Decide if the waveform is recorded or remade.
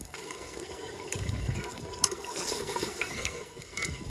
remade